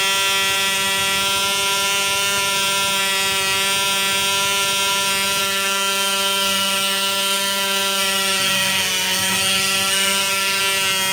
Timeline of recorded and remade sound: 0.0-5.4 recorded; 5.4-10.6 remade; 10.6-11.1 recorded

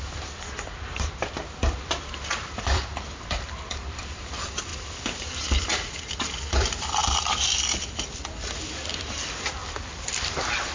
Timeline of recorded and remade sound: 0.0-9.6 recorded; 9.6-10.2 remade; 10.2-10.7 recorded

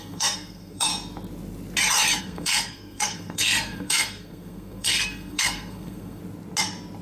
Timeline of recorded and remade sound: 0.0-0.9 remade; 0.9-2.2 recorded; 2.2-6.2 remade; 6.2-7.0 recorded

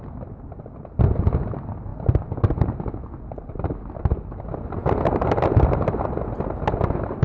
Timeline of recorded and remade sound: 0.0-7.2 recorded